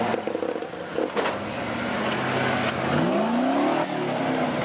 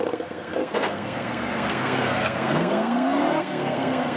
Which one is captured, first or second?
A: first